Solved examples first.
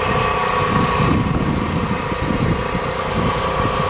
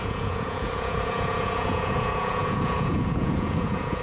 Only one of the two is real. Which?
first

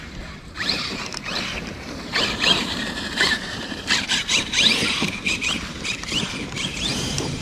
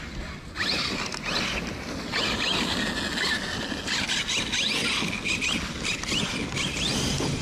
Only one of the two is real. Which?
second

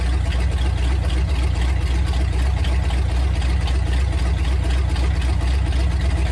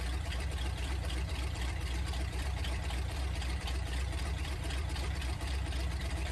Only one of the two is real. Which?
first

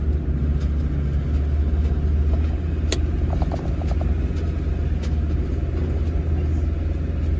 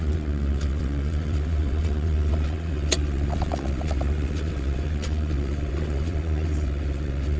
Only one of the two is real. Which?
first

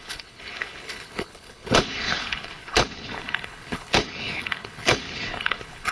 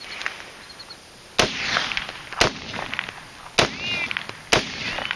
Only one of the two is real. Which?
second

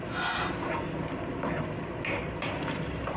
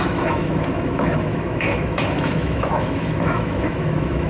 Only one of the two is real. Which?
first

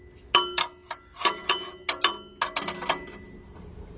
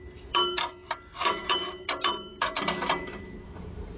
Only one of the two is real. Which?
first